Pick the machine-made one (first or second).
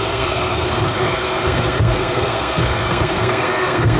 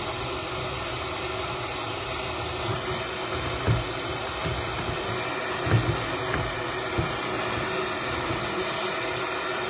first